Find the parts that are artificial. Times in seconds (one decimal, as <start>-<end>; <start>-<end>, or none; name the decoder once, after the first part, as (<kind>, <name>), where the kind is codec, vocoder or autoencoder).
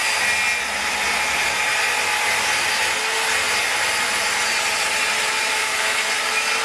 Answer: 5.5-6.1 (codec, SNAC)